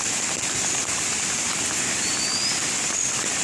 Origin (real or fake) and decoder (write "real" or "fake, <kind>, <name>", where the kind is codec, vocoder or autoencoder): real